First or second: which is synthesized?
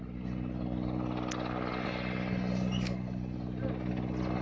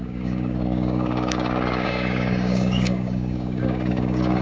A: second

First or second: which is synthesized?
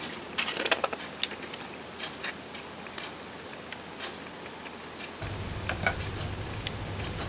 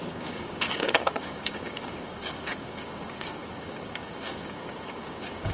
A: second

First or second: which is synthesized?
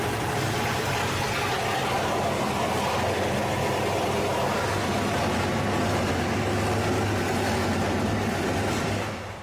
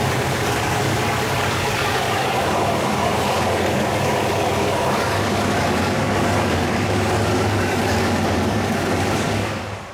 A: second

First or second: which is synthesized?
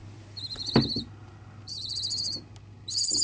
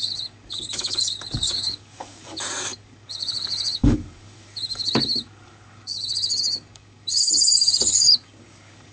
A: second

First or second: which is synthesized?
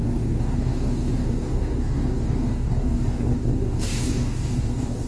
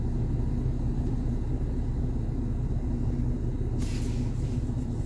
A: first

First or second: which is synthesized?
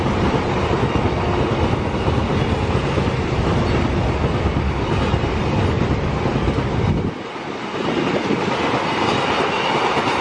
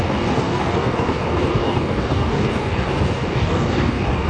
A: second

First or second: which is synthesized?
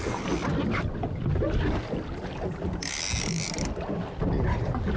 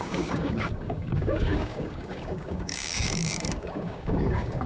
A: second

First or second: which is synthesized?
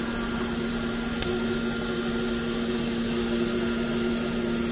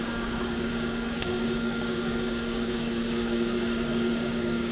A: second